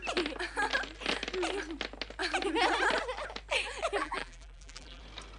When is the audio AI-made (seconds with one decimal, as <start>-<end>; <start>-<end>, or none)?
4.0-5.0